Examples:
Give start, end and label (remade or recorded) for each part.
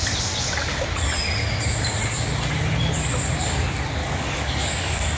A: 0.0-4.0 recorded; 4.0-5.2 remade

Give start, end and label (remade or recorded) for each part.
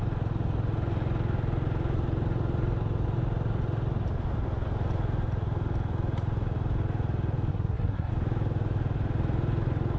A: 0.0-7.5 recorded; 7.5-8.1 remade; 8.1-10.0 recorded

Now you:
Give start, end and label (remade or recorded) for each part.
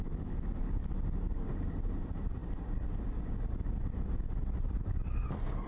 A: 0.0-5.7 recorded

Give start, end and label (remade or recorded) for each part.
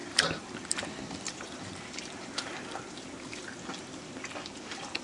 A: 0.0-3.0 remade; 3.0-5.0 recorded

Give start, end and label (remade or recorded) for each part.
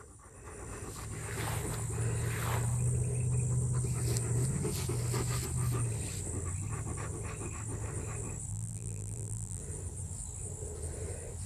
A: 0.0-8.5 recorded; 8.5-9.6 remade; 9.6-11.5 recorded